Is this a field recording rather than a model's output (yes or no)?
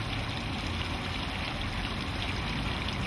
yes